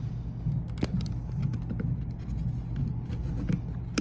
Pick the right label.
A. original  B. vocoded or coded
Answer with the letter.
A